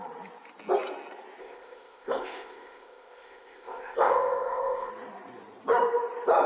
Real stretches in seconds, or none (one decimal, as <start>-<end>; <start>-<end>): 0.0-1.4; 4.9-6.5

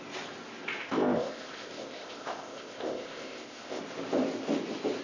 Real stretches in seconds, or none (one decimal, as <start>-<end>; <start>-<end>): 0.0-0.8; 3.8-5.0

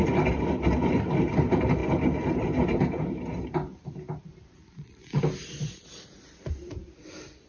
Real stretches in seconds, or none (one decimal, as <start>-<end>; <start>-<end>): 0.0-7.5

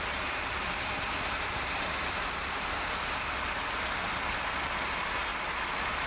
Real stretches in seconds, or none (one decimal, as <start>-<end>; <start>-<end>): 0.0-6.1

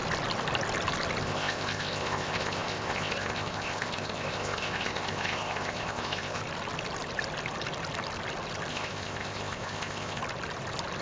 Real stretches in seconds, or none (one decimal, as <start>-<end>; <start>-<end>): 0.0-1.2; 6.4-8.7; 10.2-11.0

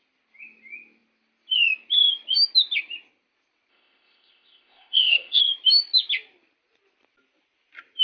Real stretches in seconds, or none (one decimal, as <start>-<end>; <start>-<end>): 0.0-3.7; 5.4-8.0

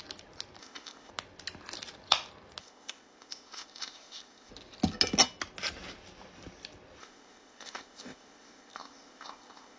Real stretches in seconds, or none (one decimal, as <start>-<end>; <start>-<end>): 0.0-0.6; 1.1-2.6; 4.5-7.0

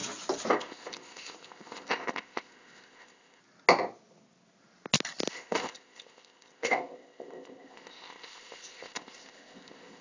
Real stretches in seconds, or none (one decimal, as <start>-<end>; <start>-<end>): 0.0-0.5; 3.4-5.3